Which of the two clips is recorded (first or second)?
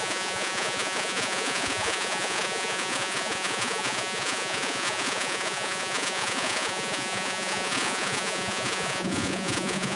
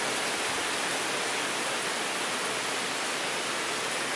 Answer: second